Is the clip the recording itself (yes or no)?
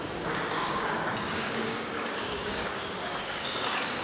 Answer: no